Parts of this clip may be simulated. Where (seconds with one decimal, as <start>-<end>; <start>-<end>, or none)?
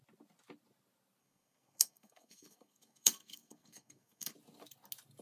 1.2-4.3